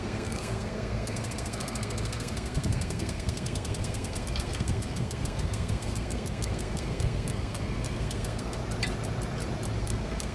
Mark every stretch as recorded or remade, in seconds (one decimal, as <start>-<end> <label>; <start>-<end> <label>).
0.0-8.6 remade; 8.6-9.8 recorded; 9.8-10.3 remade